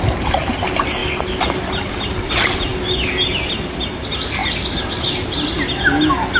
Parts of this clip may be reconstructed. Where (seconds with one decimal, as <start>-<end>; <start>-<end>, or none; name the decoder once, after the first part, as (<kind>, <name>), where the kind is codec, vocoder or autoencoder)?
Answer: 2.7-3.4 (vocoder, BigVGAN v2)